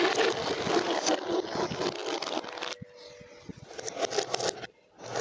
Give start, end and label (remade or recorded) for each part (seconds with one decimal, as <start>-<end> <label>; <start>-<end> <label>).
0.0-5.2 recorded